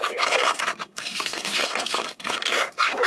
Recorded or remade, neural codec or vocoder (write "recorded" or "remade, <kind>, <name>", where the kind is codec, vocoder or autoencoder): remade, codec, SNAC